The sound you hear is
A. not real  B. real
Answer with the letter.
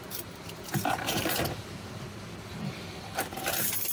A